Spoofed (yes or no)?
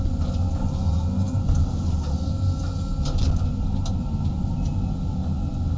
no